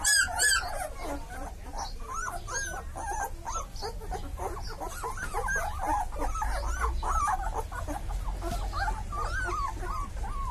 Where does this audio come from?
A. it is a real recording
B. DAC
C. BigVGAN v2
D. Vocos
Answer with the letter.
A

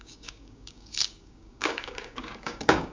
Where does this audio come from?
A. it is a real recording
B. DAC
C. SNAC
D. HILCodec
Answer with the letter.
B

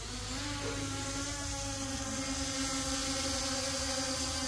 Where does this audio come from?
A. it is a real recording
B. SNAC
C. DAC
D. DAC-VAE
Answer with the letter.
A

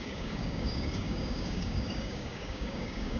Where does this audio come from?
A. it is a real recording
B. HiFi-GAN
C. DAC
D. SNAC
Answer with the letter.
C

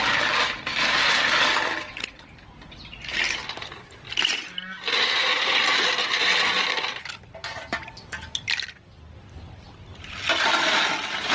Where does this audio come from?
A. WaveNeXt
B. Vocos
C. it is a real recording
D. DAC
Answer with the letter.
C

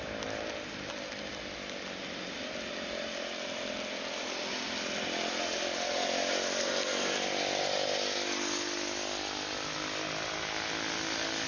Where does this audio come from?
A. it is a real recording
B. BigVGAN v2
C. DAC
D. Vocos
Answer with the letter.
A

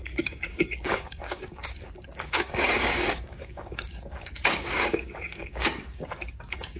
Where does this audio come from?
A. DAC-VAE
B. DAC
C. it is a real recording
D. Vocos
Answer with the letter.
B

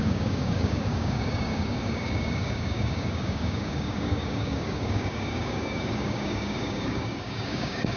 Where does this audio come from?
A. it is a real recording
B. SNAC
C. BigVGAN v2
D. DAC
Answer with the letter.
D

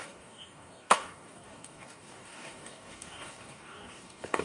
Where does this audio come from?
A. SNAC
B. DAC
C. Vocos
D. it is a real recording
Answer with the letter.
B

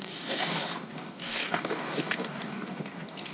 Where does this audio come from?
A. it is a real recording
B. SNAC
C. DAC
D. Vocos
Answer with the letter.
C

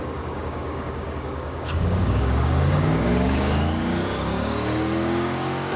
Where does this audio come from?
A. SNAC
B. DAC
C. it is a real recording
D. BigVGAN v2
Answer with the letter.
B